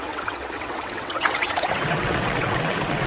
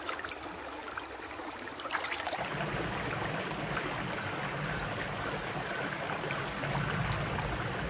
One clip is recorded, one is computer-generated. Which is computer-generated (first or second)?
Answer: first